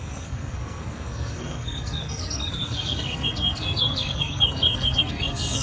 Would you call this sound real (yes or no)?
no